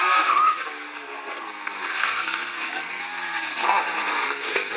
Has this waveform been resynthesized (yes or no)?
yes